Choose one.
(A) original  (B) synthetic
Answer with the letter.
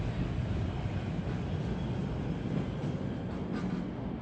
A